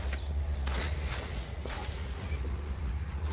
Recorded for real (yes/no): no